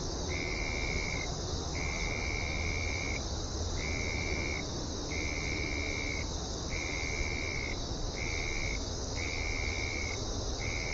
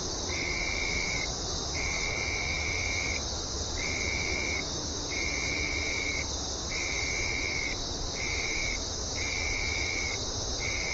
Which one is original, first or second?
first